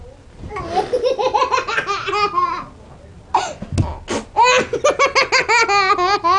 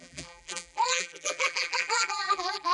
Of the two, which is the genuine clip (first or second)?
first